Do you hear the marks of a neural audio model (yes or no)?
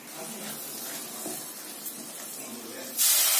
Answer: no